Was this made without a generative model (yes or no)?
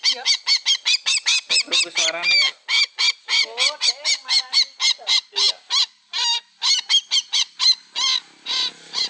yes